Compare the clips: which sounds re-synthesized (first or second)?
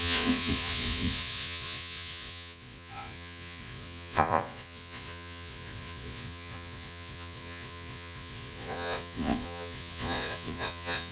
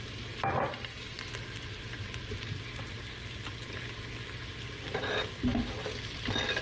first